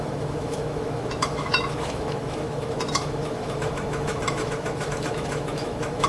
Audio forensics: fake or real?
fake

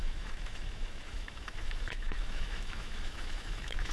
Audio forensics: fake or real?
fake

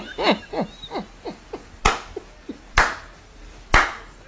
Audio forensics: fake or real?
real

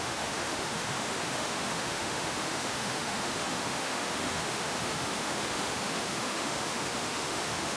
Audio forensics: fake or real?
fake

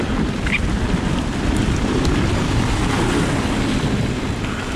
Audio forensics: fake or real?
real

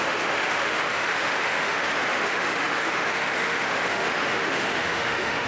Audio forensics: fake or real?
fake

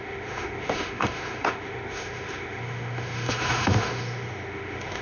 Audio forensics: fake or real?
fake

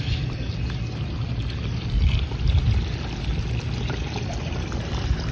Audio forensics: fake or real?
real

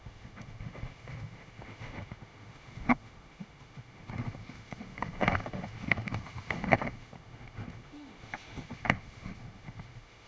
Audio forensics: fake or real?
fake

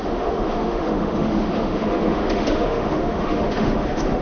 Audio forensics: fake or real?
fake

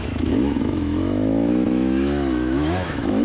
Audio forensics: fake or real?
fake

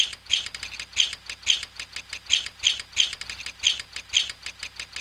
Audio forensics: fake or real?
real